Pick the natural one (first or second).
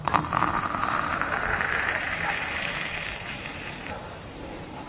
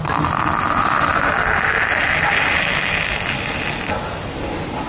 second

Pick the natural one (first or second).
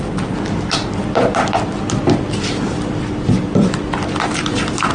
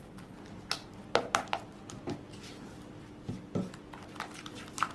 second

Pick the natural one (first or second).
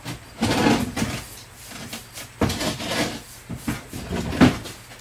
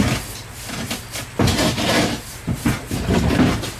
first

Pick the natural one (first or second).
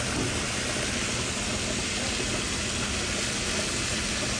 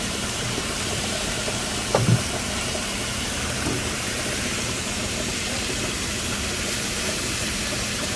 first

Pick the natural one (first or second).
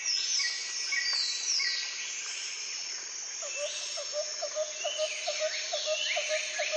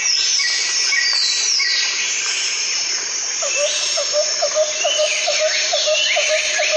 first